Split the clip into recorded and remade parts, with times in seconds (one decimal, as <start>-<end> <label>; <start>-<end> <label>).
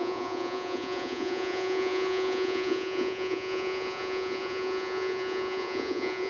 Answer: 0.0-6.3 remade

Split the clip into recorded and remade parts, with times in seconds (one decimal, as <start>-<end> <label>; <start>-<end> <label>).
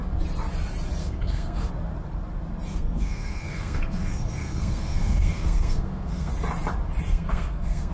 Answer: 0.0-1.0 recorded; 1.0-1.7 remade; 1.7-2.7 recorded; 2.7-6.3 remade; 6.3-7.1 recorded; 7.1-7.9 remade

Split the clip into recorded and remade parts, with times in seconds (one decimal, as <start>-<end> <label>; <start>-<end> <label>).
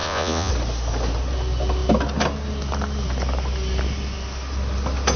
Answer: 0.0-0.5 remade; 0.5-5.2 recorded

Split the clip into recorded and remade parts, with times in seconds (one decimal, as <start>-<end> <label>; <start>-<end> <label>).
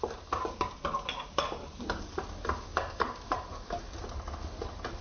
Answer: 0.0-2.7 recorded; 2.7-3.6 remade; 3.6-5.0 recorded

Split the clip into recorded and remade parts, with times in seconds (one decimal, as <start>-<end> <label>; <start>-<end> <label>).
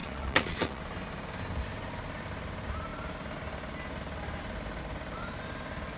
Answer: 0.0-0.8 remade; 0.8-6.0 recorded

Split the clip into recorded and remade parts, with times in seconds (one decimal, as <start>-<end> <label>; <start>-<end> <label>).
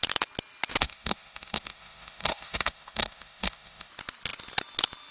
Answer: 0.0-0.8 recorded; 0.8-3.9 remade; 3.9-5.1 recorded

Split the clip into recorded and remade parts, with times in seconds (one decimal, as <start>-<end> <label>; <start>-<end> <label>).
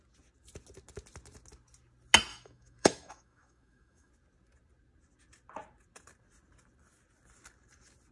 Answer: 0.0-2.3 recorded; 2.3-4.1 remade; 4.1-8.1 recorded